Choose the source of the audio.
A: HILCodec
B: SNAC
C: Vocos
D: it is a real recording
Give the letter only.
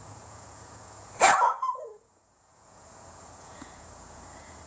C